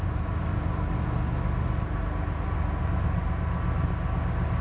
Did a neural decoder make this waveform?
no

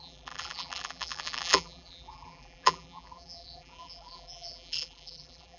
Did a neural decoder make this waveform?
yes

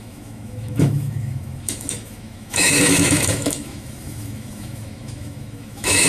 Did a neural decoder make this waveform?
yes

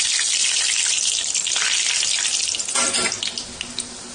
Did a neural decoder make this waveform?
no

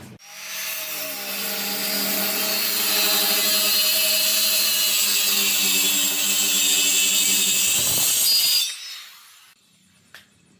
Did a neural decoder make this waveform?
no